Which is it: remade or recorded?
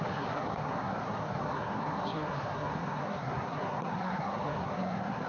remade